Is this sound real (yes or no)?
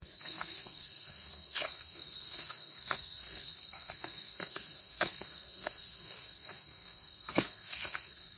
no